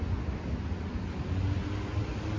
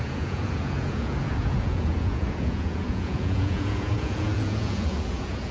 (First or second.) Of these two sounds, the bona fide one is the first